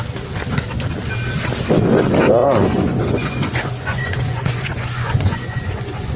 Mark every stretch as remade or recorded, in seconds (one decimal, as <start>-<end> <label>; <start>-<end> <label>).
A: 0.0-2.4 recorded; 2.4-6.2 remade